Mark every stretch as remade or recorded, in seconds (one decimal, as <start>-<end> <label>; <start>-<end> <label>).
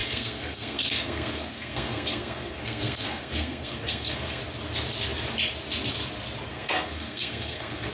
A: 0.0-4.4 remade; 4.4-6.5 recorded; 6.5-7.9 remade